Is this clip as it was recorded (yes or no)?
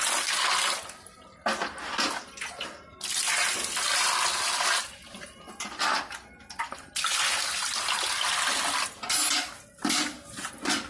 yes